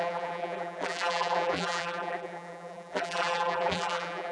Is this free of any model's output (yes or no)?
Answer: no